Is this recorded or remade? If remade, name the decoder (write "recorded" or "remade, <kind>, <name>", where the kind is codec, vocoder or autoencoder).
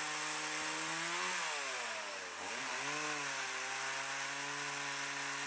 recorded